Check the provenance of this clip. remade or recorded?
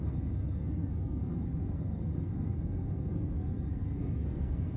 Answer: remade